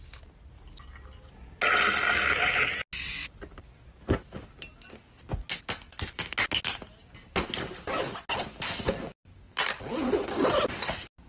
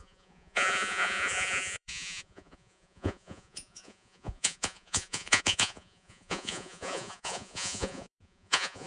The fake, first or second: second